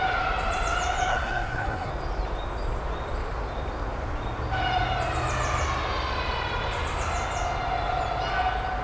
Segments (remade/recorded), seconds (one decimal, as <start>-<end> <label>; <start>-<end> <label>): 0.0-1.1 recorded; 1.1-1.9 remade; 1.9-8.8 recorded